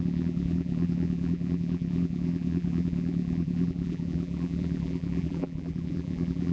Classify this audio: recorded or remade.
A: remade